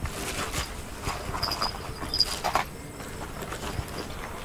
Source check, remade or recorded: recorded